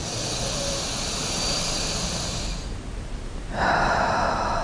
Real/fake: real